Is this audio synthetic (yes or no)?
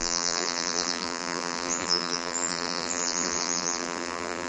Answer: yes